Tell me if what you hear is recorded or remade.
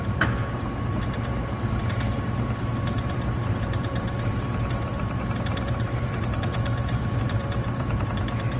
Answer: remade